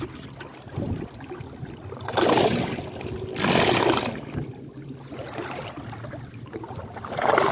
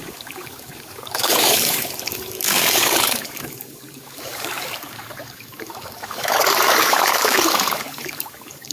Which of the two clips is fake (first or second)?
second